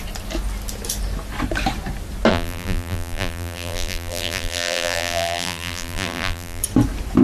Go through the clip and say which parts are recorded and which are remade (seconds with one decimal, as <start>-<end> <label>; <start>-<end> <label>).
0.0-2.3 recorded; 2.3-6.6 remade; 6.6-7.2 recorded